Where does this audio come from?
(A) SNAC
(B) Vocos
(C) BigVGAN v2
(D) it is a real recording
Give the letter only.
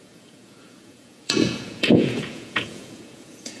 B